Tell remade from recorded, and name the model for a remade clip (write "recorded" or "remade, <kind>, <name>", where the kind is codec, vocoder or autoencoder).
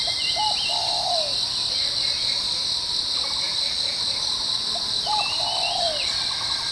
recorded